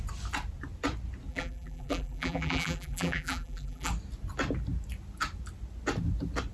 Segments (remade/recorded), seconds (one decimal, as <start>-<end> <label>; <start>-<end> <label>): 0.0-1.3 recorded; 1.3-3.9 remade; 3.9-6.5 recorded